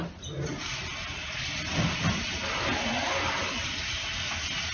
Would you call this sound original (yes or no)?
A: yes